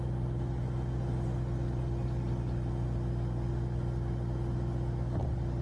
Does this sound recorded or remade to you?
recorded